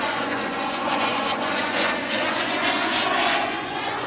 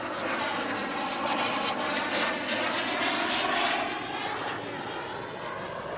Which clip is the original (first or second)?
second